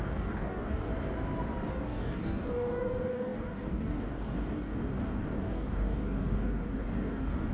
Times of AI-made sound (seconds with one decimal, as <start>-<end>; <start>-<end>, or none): 0.0-0.9; 1.7-7.5